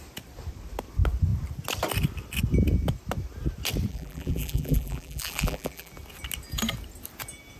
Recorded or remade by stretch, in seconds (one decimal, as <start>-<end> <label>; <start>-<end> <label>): 0.0-3.9 recorded; 3.9-5.9 remade; 5.9-7.6 recorded